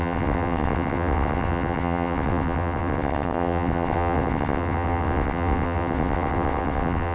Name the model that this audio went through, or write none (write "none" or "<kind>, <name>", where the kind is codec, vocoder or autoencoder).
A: vocoder, WaveNeXt